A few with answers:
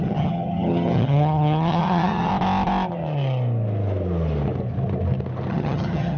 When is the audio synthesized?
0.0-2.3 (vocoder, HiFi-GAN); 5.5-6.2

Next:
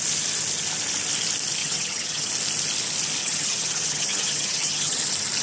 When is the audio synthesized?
1.6-2.3 (vocoder, HiFi-GAN); 3.2-5.0

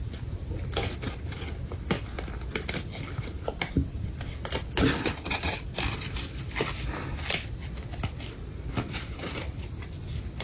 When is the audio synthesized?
5.0-5.6 (vocoder, HiFi-GAN)

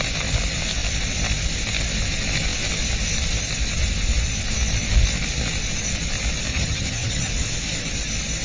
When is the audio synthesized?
6.5-7.3 (vocoder, HiFi-GAN)

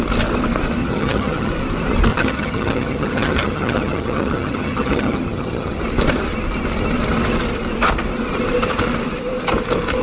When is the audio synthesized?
0.8-1.5 (vocoder, HiFi-GAN); 2.1-5.8

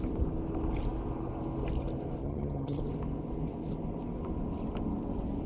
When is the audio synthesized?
2.2-2.8 (vocoder, HiFi-GAN)

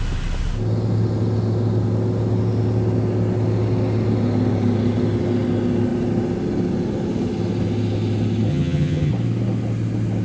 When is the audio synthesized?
8.5-9.1 (vocoder, HiFi-GAN)